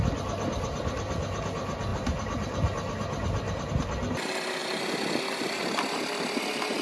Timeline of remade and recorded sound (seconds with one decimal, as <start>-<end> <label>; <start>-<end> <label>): 0.0-6.8 recorded

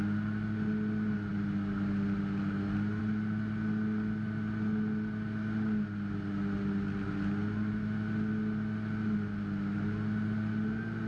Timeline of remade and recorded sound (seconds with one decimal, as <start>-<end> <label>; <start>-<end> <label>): 0.0-11.1 recorded

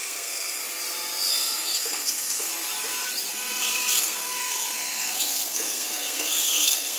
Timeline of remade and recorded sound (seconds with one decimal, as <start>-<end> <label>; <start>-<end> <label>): 0.0-0.6 remade; 0.6-1.3 recorded; 1.3-2.5 remade; 2.5-3.3 recorded; 3.3-7.0 remade

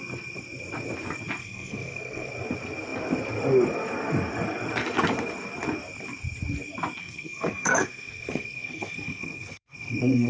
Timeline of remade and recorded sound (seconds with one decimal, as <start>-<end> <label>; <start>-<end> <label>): 0.0-1.4 recorded; 1.4-2.3 remade; 2.3-7.0 recorded; 7.0-10.3 remade

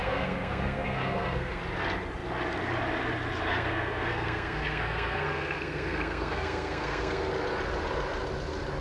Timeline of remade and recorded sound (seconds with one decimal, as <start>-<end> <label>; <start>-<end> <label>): 0.0-1.6 remade; 1.6-3.5 recorded; 3.5-7.3 remade; 7.3-8.8 recorded

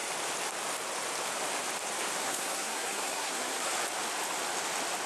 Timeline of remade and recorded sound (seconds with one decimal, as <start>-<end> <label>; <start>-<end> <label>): 0.0-2.2 recorded; 2.2-3.7 remade; 3.7-5.1 recorded